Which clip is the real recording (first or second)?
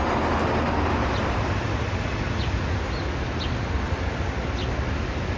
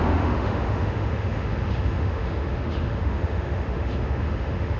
first